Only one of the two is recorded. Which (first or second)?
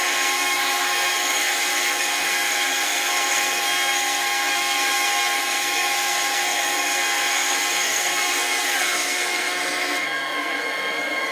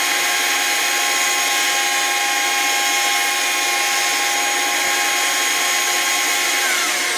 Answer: second